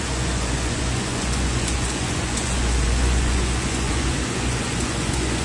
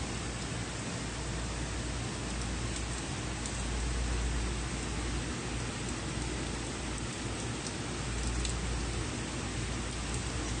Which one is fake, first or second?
first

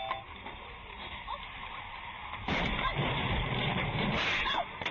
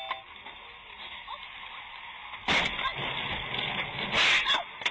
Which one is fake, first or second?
first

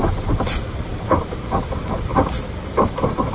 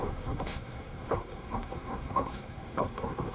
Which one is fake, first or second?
second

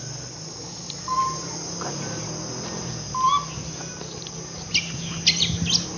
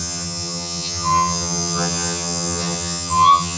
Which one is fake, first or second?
second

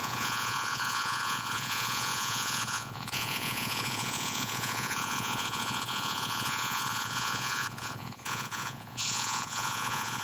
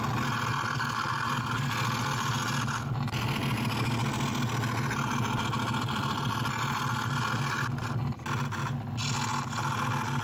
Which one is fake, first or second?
first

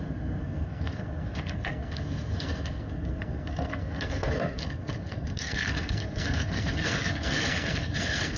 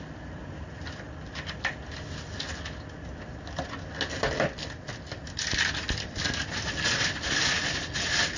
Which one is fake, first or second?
first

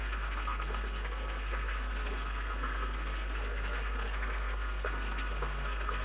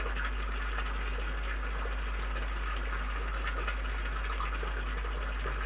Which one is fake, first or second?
first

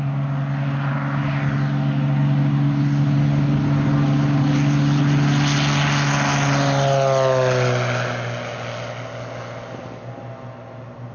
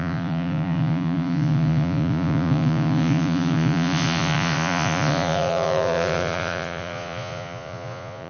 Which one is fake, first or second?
second